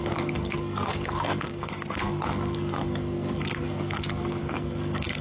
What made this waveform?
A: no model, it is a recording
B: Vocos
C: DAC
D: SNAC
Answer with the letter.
D